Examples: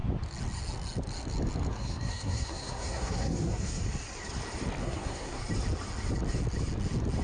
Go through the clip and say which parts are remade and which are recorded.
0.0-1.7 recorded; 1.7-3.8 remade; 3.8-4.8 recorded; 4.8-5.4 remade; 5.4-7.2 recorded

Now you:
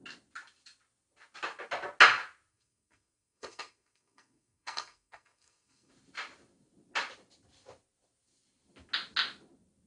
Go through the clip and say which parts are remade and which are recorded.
0.0-2.5 recorded; 2.5-5.9 remade; 5.9-9.9 recorded

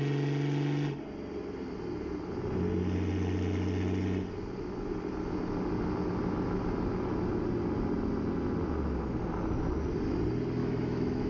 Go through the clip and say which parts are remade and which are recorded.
0.0-10.6 recorded; 10.6-11.3 remade

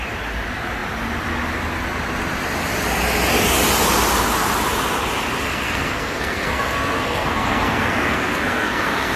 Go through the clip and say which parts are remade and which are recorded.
0.0-5.5 recorded; 5.5-9.2 remade

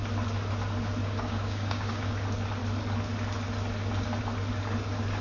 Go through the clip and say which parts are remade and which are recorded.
0.0-1.0 recorded; 1.0-2.1 remade; 2.1-5.2 recorded

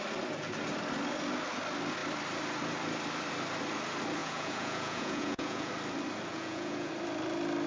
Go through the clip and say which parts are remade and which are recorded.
0.0-4.2 recorded; 4.2-5.7 remade; 5.7-6.3 recorded; 6.3-6.9 remade; 6.9-7.7 recorded